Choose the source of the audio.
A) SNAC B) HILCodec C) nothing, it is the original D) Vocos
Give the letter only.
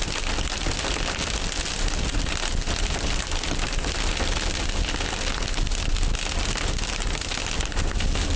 C